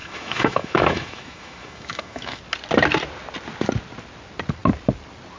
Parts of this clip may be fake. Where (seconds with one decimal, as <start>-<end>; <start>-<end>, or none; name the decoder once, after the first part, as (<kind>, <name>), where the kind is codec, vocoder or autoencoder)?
0.0-2.4 (autoencoder, DAC-VAE)